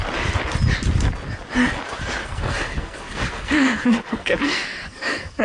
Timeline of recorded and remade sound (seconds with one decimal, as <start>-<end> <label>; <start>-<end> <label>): 0.0-2.2 recorded; 2.2-5.4 remade